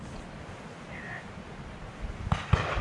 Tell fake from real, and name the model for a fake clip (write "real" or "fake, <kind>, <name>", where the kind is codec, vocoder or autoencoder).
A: real